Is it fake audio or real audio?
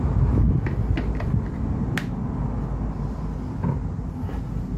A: real